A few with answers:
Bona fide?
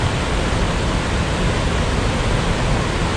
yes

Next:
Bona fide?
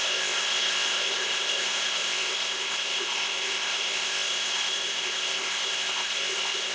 no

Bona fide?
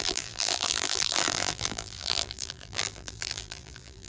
no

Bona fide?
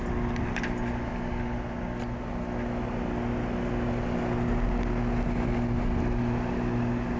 yes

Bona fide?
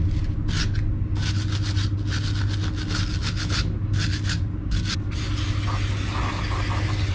yes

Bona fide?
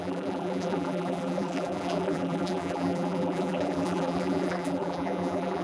no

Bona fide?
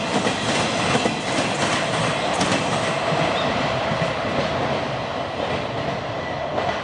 yes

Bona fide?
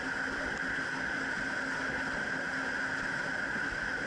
yes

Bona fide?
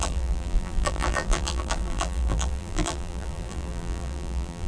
no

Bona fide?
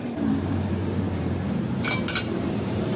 no